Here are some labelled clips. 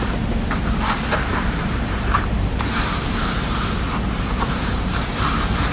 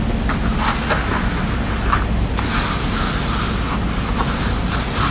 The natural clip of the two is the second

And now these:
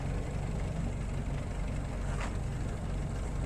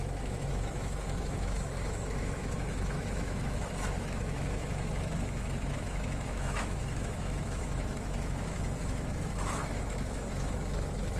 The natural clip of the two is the first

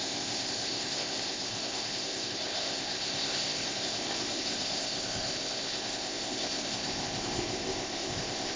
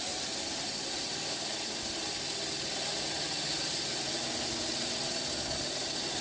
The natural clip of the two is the second